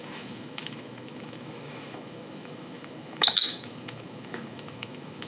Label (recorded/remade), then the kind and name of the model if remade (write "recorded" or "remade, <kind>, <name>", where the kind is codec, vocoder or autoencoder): remade, autoencoder, DAC-VAE